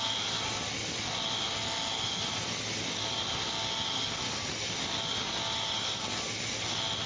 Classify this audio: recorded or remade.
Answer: recorded